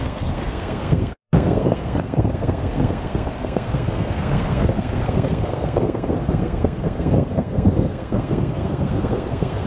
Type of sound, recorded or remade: remade